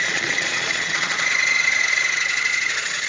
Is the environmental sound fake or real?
fake